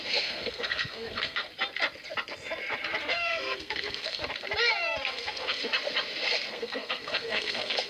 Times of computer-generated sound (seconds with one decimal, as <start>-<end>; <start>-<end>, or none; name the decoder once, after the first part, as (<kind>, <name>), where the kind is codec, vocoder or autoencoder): 0.0-1.5 (codec, SNAC); 3.0-4.2; 5.1-5.6; 6.5-7.9